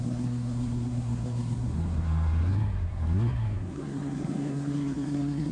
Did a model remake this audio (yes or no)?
yes